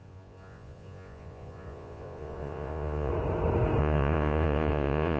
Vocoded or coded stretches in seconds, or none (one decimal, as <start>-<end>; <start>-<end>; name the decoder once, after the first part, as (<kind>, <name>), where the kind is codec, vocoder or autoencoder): 0.0-3.1 (vocoder, Vocos); 3.8-5.2